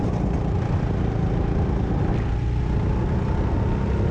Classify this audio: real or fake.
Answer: real